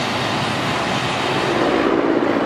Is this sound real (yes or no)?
yes